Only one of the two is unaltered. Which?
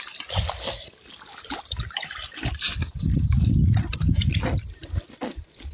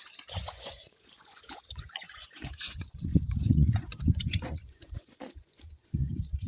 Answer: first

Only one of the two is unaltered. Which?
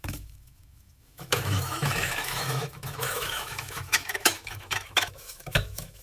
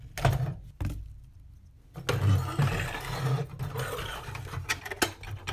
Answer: second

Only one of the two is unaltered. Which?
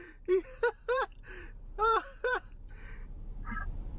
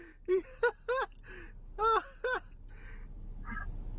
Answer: second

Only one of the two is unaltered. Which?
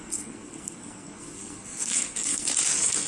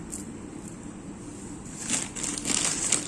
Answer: second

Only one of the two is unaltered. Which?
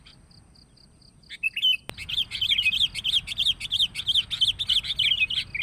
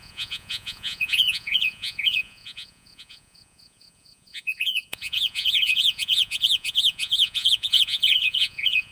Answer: first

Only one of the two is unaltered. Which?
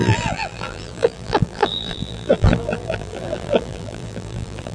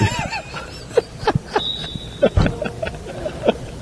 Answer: second